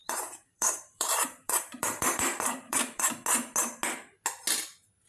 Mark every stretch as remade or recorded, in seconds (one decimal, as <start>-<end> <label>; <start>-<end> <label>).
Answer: 0.0-3.1 remade; 3.1-5.1 recorded